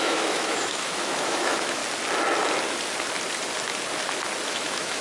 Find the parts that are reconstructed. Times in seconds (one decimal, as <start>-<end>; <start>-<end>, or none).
0.0-1.8; 4.5-5.0